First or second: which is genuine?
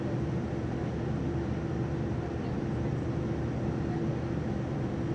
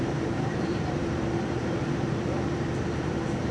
first